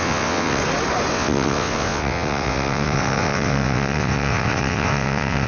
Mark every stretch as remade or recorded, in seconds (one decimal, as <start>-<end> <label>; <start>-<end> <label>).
0.0-0.6 remade; 0.6-1.1 recorded; 1.1-5.5 remade